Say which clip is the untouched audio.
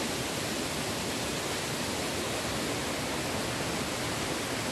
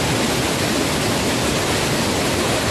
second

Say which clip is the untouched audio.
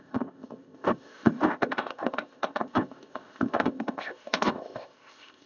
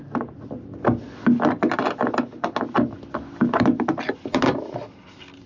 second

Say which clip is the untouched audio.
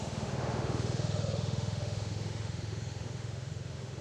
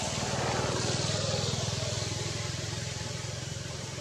second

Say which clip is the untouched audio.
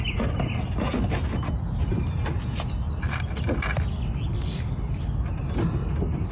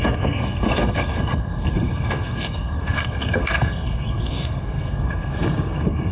first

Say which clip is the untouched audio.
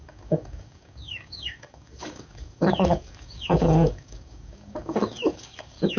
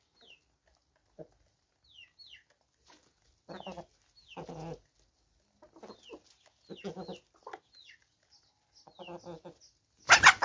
second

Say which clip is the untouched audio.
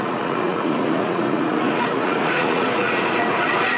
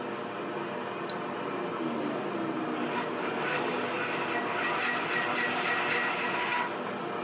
second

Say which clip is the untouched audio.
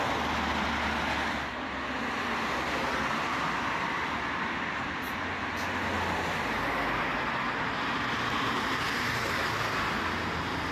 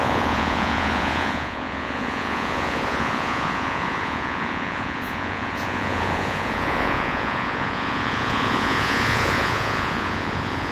first